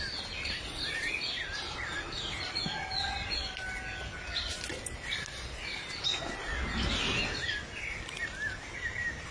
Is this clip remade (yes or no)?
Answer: no